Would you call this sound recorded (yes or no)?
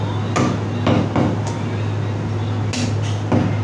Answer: yes